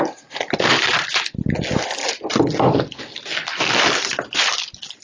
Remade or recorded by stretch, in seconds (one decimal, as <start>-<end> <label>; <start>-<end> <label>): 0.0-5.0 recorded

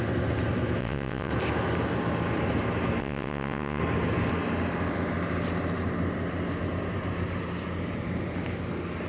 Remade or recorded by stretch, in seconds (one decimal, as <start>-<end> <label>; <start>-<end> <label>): 0.0-0.8 recorded; 0.8-1.3 remade; 1.3-3.0 recorded; 3.0-3.8 remade; 3.8-9.1 recorded

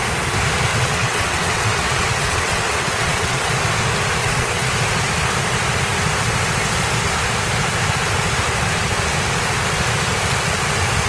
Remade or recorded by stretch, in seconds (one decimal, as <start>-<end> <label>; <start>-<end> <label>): 0.0-0.7 recorded; 0.7-3.5 remade; 3.5-4.2 recorded; 4.2-4.7 remade; 4.7-11.1 recorded